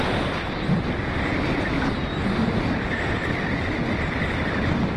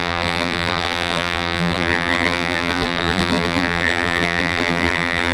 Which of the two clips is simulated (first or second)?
second